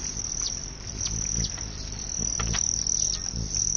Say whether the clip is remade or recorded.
recorded